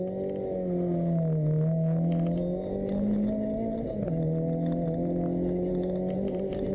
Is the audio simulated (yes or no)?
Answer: no